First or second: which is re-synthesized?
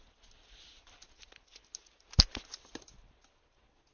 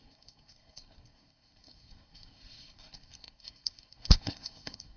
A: second